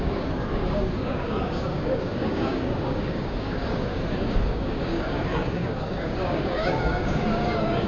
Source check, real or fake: fake